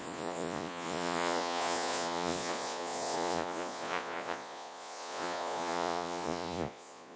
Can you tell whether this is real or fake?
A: fake